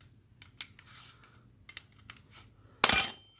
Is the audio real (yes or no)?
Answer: yes